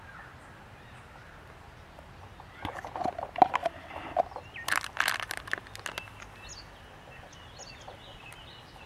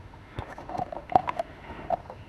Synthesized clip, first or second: second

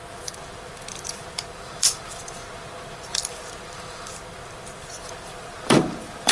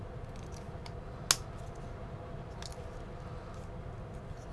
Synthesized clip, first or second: first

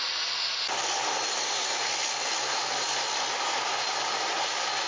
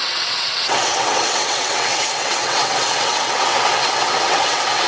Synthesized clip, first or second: second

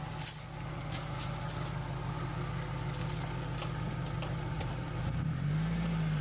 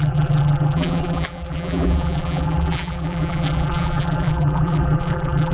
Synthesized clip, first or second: second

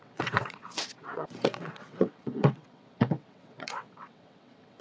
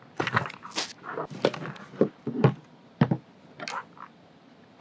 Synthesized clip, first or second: first